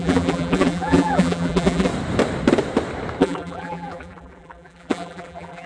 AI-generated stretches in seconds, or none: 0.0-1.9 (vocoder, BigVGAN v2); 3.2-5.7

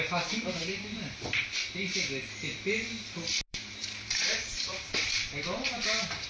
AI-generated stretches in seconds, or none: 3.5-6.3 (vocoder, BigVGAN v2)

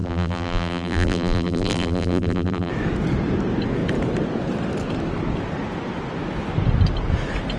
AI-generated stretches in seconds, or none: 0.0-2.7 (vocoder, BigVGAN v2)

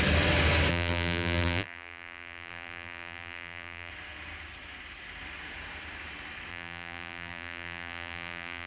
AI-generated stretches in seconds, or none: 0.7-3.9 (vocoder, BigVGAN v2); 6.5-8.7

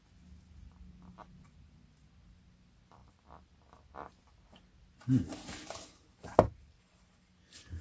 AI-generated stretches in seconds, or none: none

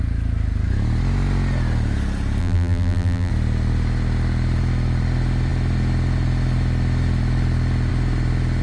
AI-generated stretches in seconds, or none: 2.4-3.3 (vocoder, BigVGAN v2)